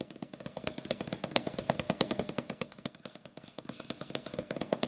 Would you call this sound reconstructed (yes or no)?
yes